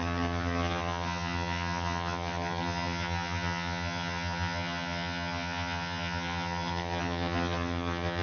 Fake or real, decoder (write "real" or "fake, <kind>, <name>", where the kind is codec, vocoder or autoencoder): fake, vocoder, HiFi-GAN